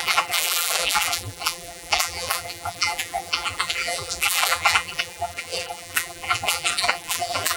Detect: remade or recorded remade